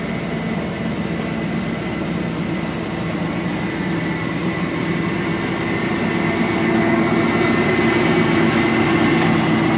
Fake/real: real